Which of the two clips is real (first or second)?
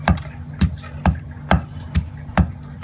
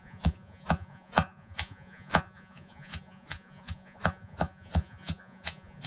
first